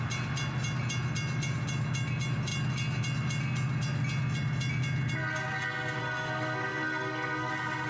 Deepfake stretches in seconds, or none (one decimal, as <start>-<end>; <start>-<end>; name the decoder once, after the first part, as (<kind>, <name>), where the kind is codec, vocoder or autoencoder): 6.0-7.5 (codec, SNAC)